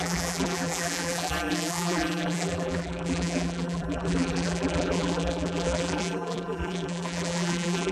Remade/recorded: remade